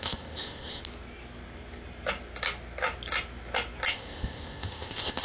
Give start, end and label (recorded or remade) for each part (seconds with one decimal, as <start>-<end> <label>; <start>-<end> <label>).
0.0-0.8 remade; 0.8-3.9 recorded; 3.9-5.2 remade